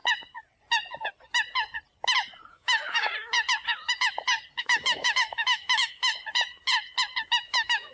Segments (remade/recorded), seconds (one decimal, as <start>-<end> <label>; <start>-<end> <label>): 0.0-2.5 recorded; 2.5-3.1 remade; 3.1-4.6 recorded; 4.6-6.1 remade; 6.1-7.4 recorded; 7.4-7.9 remade